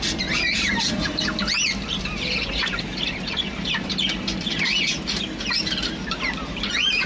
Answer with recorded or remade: remade